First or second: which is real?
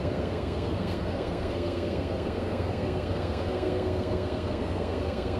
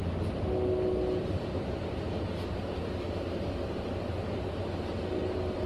second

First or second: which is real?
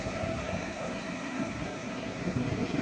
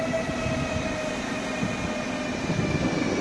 second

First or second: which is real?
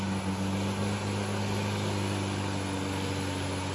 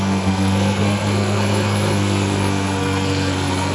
first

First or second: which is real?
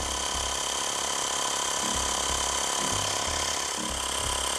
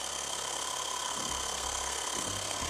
first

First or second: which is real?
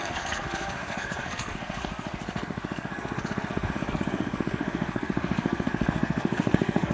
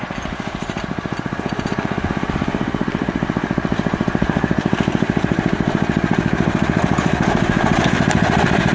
second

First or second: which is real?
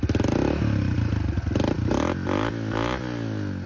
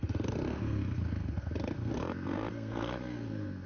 first